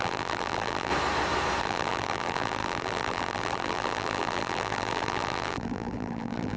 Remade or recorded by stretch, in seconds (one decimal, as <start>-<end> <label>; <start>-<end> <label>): 0.0-0.9 remade; 0.9-1.6 recorded; 1.6-6.6 remade